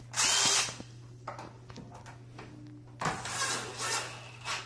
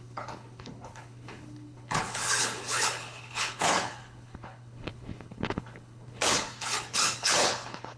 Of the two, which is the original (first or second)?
first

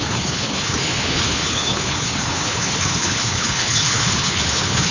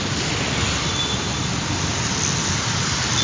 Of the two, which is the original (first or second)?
second